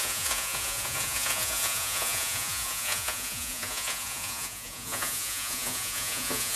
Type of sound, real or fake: fake